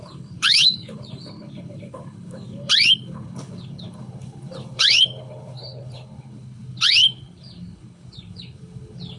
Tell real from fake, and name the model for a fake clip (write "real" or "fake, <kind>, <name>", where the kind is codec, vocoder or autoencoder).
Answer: fake, codec, HILCodec